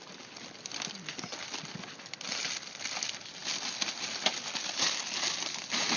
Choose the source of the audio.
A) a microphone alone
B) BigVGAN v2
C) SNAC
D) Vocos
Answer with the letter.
A